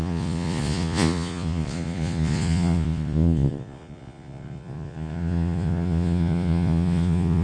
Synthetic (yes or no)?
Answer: yes